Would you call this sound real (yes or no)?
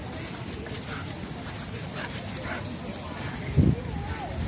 yes